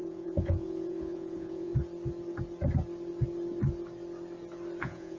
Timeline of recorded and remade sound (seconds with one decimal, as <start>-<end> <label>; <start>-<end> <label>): 0.0-1.7 remade; 1.7-4.8 recorded; 4.8-5.2 remade